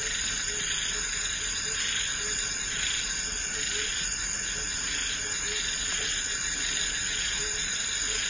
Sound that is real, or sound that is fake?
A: real